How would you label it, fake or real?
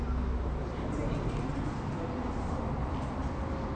real